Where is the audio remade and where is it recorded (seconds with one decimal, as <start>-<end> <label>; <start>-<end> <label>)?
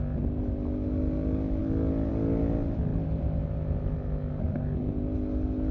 0.0-2.9 recorded; 2.9-3.4 remade; 3.4-5.7 recorded